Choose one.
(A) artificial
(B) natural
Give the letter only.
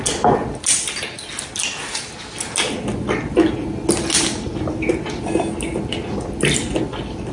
B